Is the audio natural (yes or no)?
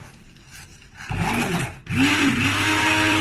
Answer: no